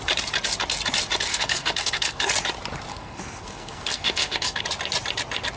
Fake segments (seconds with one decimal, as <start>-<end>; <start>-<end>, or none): 1.3-2.3; 2.9-4.6